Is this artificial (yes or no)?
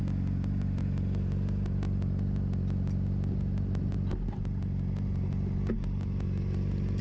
no